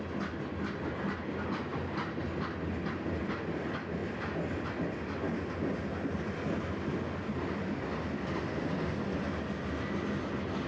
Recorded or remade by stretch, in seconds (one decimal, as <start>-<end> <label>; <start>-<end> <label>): 0.0-10.7 recorded